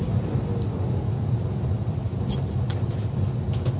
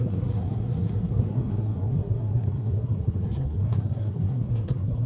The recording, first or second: first